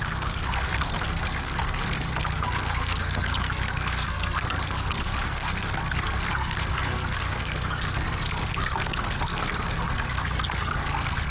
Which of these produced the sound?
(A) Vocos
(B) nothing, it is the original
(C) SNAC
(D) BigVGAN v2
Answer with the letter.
C